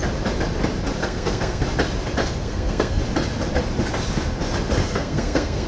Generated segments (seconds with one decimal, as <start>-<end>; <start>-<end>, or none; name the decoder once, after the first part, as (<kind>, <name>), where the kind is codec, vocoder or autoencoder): 1.0-1.6 (codec, SNAC); 2.2-3.0; 4.8-5.7